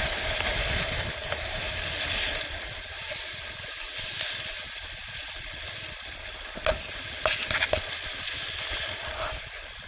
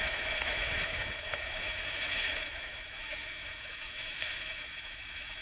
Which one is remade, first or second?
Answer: second